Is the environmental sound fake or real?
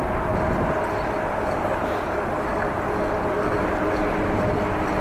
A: real